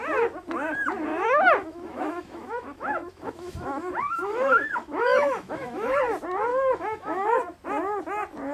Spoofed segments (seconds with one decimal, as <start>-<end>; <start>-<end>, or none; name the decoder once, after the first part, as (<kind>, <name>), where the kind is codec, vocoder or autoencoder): 1.1-6.0 (autoencoder, DAC-VAE); 6.5-7.4